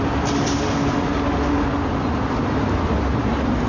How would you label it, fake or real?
real